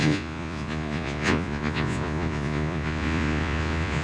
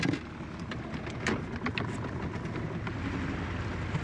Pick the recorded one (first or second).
second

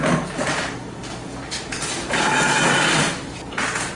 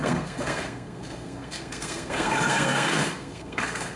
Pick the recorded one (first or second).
first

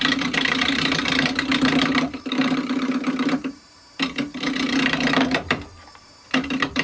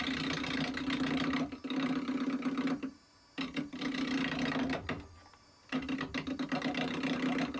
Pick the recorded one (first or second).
second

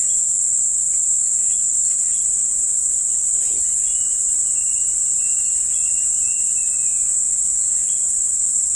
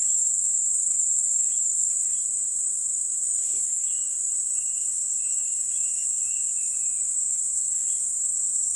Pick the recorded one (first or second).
first